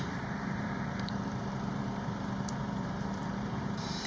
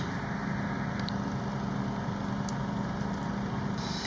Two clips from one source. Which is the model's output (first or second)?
first